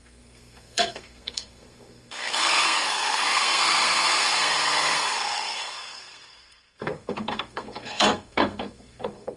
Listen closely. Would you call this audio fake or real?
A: fake